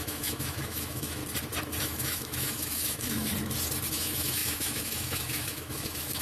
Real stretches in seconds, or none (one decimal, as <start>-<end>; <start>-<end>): 1.2-1.8; 3.3-3.9

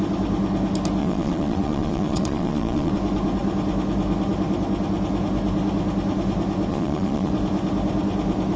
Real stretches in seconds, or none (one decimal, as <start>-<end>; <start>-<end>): 0.0-1.0; 2.9-6.7; 7.3-8.6

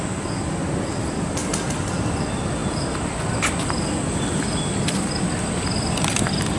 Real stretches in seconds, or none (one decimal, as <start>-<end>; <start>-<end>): 0.0-6.6

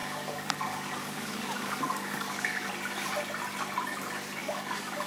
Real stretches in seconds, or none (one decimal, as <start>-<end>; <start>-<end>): 2.7-4.4